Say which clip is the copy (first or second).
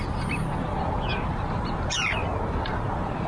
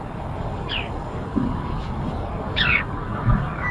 second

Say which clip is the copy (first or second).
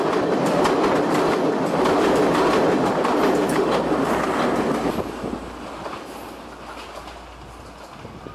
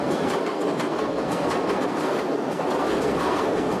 second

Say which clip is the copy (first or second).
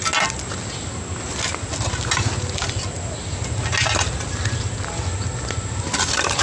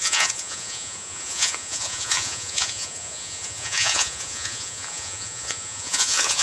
second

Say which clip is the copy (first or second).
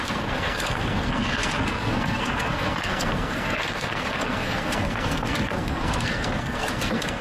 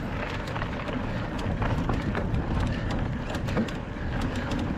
first